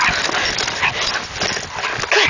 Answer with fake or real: real